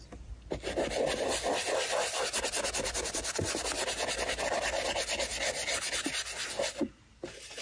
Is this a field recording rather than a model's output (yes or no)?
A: yes